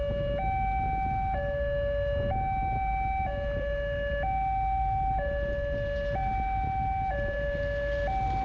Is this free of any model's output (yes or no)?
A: yes